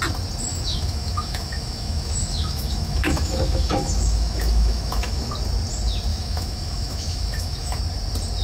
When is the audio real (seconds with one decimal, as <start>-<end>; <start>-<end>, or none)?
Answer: 0.0-0.5; 5.3-6.1; 7.8-8.4